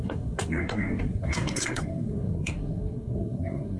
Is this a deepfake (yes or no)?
yes